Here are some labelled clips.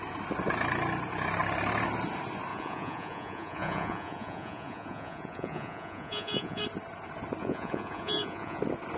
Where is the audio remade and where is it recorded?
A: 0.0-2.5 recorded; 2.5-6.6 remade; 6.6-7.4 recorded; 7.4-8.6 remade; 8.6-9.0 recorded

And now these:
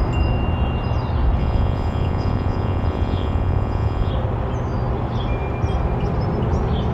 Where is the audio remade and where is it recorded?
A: 0.0-1.4 recorded; 1.4-4.1 remade; 4.1-6.9 recorded

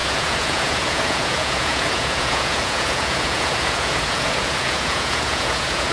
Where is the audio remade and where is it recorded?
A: 0.0-5.9 remade

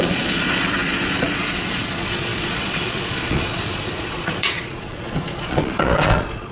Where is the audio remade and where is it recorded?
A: 0.0-6.5 remade

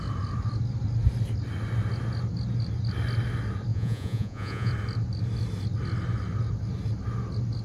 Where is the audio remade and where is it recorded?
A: 0.0-3.7 recorded; 3.7-4.7 remade; 4.7-7.6 recorded